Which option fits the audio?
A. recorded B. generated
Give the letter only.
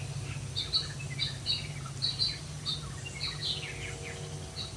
A